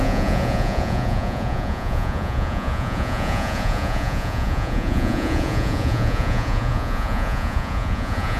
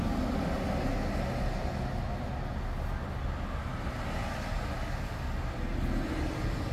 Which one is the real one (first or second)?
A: second